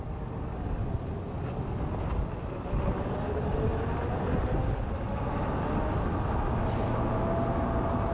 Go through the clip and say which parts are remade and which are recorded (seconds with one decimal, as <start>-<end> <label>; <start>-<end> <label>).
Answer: 0.0-8.1 recorded